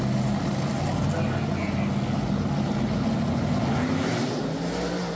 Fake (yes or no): no